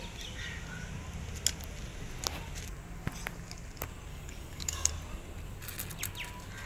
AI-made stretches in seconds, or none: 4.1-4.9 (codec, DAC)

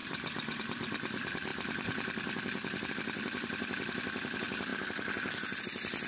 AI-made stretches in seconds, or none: none